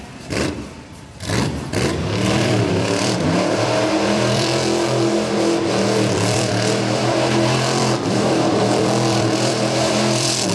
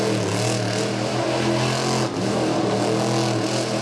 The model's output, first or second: first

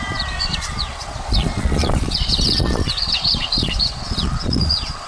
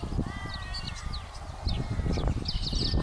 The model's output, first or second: first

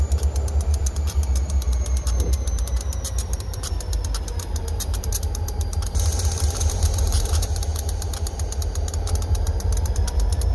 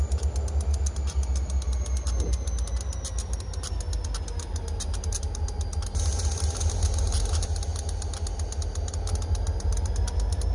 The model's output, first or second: first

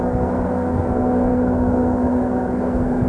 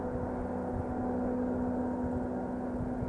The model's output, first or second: first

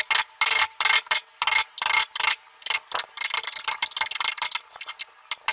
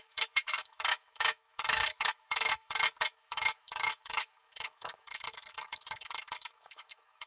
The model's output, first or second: second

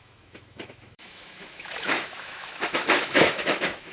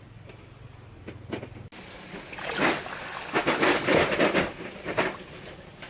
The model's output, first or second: first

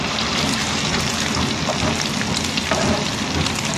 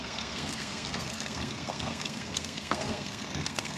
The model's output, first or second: second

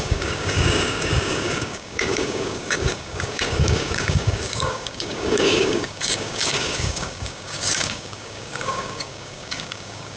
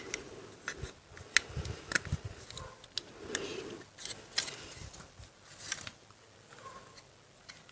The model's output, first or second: first